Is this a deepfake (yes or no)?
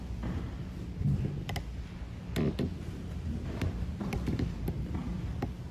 no